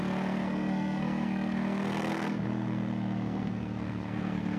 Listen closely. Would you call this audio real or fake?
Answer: fake